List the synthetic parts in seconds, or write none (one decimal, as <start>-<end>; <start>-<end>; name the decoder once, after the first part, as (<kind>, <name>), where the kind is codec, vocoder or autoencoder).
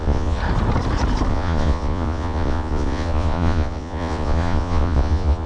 0.0-0.4 (vocoder, Vocos); 1.3-5.5